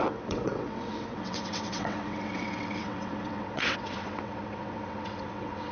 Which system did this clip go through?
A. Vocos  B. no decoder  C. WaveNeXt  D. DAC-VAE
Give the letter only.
C